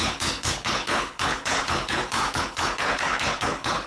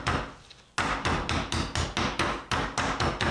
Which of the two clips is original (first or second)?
second